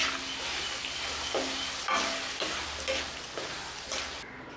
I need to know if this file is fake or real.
real